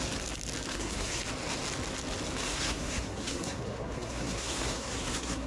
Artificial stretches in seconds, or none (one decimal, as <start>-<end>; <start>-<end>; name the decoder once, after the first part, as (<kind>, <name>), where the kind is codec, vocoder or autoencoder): 0.7-1.2 (codec, SNAC); 2.5-5.5